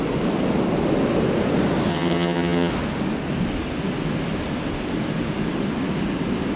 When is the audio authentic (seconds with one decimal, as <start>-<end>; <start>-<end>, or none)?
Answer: 0.0-1.9; 2.7-6.6